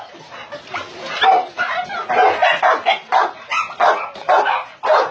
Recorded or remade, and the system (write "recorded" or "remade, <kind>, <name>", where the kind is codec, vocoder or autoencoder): recorded